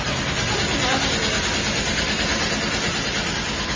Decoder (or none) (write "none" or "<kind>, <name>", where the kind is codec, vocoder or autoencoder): none